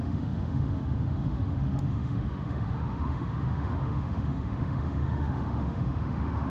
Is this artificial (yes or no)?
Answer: yes